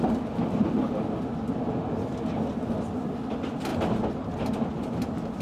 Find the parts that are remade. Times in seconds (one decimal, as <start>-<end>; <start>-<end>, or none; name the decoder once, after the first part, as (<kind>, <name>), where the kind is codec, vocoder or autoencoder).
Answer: none